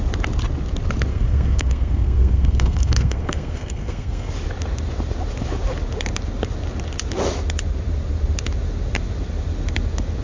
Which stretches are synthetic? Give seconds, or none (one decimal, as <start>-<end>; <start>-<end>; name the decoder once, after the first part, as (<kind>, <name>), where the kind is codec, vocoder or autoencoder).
1.1-4.3 (codec, SNAC)